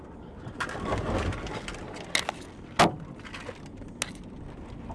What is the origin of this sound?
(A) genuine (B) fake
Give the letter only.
A